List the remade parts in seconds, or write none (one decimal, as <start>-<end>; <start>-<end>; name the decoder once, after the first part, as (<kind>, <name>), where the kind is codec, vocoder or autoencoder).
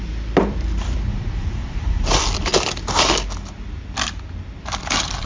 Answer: 0.0-2.5 (vocoder, BigVGAN v2); 4.6-5.3